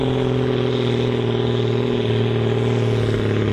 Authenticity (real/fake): real